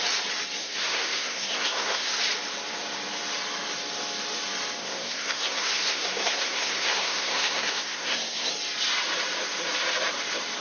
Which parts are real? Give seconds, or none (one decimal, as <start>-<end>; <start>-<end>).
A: 0.0-0.6; 2.2-4.8; 8.5-10.6